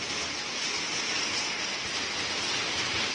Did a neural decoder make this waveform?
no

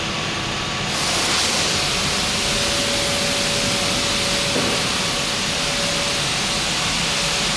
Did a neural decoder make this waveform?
no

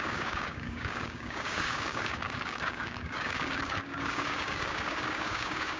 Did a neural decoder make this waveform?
yes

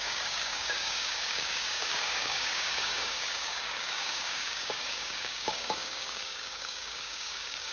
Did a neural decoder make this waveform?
yes